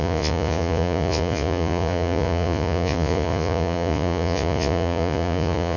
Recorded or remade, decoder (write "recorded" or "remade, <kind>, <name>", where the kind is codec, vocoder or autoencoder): remade, vocoder, Vocos